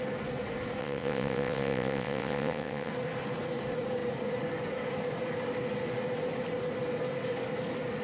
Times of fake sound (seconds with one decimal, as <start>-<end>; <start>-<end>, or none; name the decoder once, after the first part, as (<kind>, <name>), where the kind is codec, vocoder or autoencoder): 0.8-2.9 (vocoder, WaveNeXt)